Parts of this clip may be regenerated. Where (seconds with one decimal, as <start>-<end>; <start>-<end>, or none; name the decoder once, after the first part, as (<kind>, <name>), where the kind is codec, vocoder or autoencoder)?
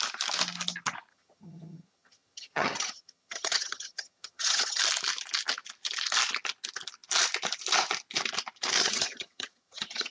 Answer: 1.1-4.8 (vocoder, HiFi-GAN); 8.8-10.1